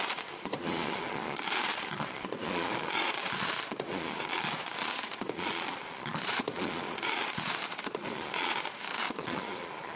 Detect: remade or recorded remade